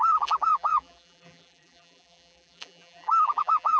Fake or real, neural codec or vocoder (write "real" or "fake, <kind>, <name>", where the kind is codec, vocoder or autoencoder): fake, vocoder, BigVGAN v2